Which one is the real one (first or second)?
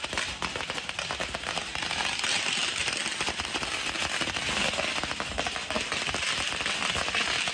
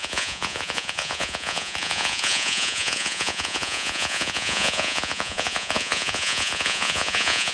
first